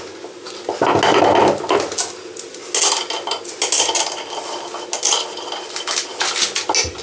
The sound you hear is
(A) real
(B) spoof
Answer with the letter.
A